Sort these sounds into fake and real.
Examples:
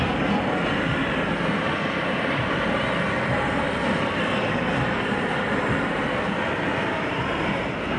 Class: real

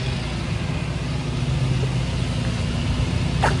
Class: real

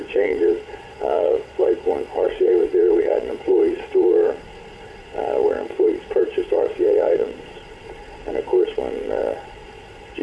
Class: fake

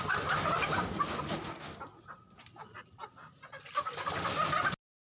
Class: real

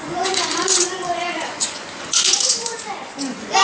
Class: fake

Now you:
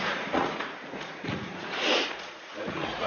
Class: fake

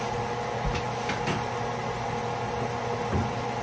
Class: real